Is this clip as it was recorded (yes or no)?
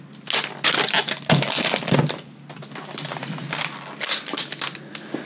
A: yes